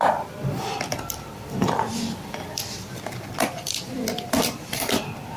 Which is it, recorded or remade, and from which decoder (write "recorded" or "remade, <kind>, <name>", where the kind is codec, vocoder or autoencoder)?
remade, vocoder, BigVGAN v2